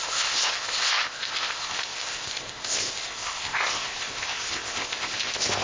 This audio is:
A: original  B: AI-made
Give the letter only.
B